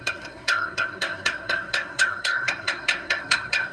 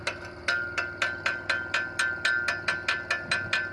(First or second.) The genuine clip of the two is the second